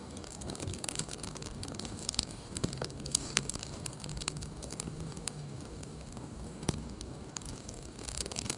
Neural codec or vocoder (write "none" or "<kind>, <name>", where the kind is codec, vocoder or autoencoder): codec, DAC